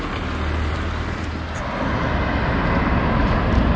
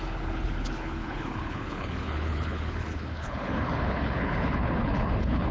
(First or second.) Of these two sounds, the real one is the first